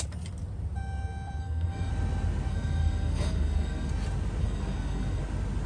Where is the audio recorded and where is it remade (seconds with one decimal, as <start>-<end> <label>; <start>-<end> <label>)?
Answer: 0.0-1.4 recorded; 1.4-1.9 remade; 1.9-2.5 recorded; 2.5-3.9 remade; 3.9-4.4 recorded; 4.4-5.2 remade; 5.2-5.7 recorded